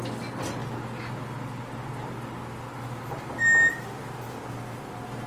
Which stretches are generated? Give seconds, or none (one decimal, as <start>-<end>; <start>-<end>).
none